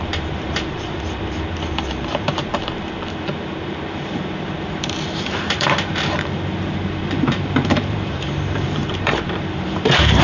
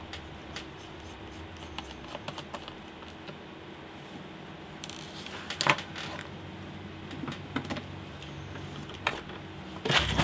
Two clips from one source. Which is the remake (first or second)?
first